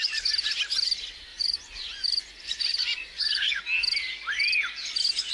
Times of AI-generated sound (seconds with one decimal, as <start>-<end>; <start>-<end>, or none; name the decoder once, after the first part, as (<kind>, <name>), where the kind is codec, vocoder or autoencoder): 1.3-3.6 (vocoder, Vocos)